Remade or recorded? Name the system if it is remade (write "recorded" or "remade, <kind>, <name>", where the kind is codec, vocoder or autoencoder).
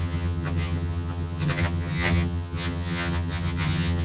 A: remade, vocoder, HiFi-GAN